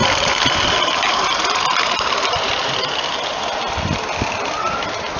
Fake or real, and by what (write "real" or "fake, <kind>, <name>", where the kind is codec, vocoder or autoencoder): real